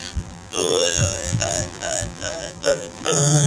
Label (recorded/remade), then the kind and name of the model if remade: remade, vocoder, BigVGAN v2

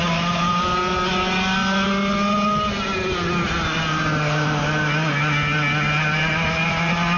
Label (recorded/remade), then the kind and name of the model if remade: recorded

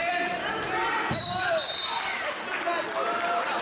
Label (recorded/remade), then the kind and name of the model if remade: recorded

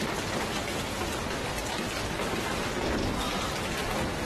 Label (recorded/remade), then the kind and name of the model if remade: recorded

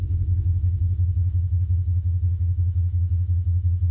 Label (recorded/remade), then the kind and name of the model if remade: remade, codec, HILCodec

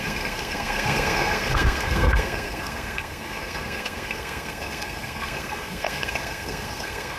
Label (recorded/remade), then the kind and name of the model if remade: remade, codec, SNAC